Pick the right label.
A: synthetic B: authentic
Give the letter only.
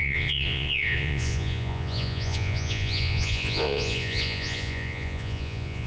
A